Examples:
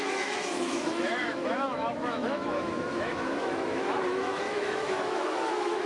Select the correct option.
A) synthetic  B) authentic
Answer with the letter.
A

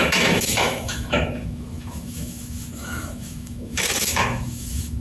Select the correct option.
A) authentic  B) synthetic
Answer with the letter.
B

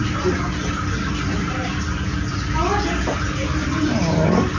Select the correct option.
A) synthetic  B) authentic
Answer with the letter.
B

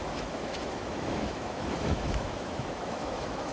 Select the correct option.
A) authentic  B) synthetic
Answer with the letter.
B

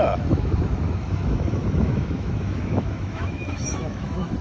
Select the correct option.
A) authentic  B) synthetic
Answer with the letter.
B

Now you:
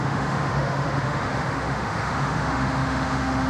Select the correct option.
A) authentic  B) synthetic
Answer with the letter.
B